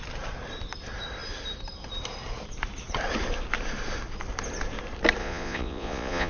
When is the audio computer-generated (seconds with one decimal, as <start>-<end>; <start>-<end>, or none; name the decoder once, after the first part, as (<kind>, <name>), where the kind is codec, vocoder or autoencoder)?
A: 5.2-6.3 (vocoder, Vocos)